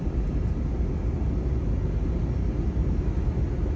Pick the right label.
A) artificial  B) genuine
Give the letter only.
B